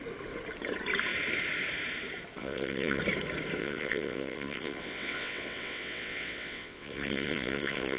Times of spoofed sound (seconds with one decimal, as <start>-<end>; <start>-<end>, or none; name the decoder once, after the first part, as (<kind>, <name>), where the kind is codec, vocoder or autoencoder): 2.4-3.0 (vocoder, WaveNeXt); 3.6-8.0